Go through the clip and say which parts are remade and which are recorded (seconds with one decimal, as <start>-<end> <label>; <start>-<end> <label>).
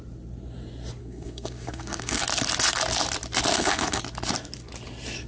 0.0-1.0 recorded; 1.0-2.2 remade; 2.2-3.5 recorded; 3.5-4.0 remade; 4.0-5.3 recorded